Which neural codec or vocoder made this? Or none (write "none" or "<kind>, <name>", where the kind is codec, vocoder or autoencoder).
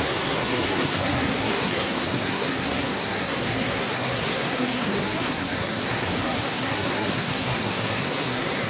codec, SNAC